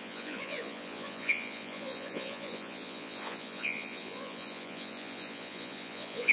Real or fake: fake